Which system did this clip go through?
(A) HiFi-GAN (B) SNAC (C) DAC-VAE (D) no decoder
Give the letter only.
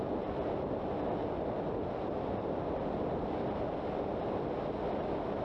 D